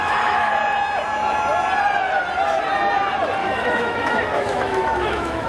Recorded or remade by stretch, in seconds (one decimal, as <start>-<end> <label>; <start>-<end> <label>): 0.0-0.5 remade; 0.5-3.4 recorded; 3.4-5.5 remade